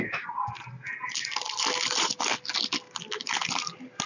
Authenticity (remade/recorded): recorded